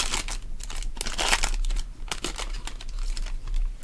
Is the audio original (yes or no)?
yes